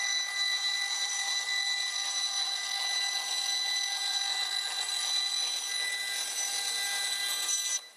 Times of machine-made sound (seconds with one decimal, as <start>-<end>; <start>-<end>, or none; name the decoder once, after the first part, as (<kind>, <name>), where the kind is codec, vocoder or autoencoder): none